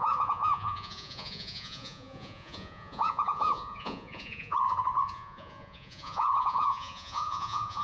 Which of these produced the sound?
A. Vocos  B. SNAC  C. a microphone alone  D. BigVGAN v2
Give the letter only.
A